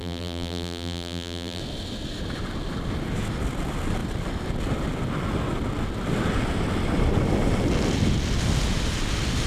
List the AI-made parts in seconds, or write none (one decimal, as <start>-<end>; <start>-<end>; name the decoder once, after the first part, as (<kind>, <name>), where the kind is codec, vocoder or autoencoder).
0.0-1.6 (vocoder, BigVGAN v2)